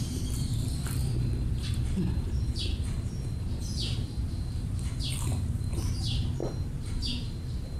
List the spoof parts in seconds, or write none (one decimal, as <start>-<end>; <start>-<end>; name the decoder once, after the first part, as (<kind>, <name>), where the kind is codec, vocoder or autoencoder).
0.0-7.8 (vocoder, BigVGAN v2)